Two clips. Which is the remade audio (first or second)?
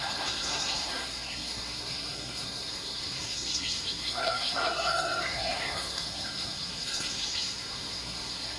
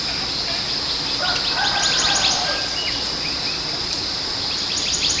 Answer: first